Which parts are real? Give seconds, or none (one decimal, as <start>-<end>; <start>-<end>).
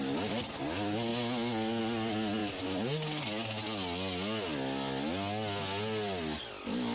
0.0-6.9